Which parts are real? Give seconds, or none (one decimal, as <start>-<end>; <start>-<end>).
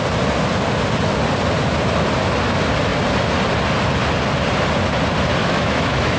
0.0-5.4